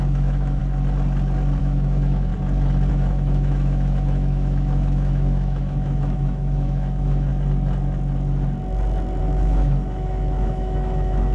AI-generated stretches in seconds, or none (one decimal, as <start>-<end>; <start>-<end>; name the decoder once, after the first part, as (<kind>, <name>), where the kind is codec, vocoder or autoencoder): 0.0-0.6 (autoencoder, DAC-VAE); 1.6-2.3; 2.9-7.3; 9.2-11.3